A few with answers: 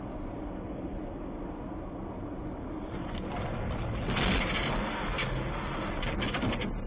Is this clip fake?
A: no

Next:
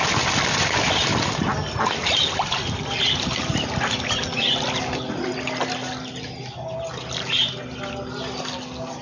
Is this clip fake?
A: no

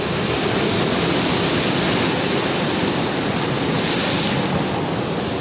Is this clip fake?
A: no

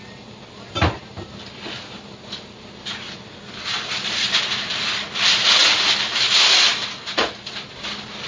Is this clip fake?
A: no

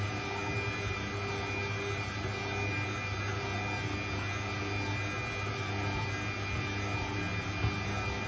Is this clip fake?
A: no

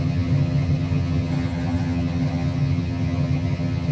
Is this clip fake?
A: yes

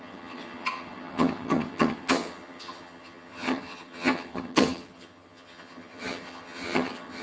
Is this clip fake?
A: yes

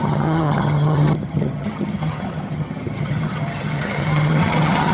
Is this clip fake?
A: yes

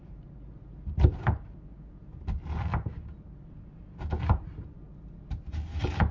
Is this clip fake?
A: no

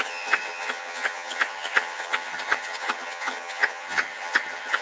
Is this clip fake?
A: yes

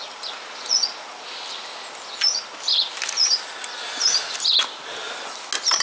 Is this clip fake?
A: no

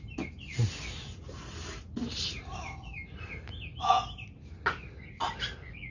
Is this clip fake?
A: no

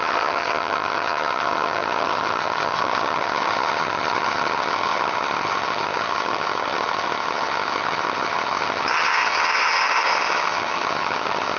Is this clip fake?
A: yes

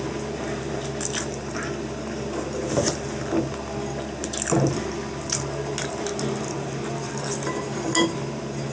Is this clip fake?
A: no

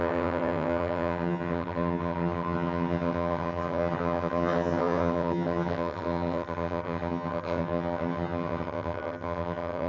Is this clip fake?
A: yes